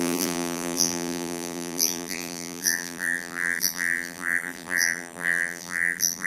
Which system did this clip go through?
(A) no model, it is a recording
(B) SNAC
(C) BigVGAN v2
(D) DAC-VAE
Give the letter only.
C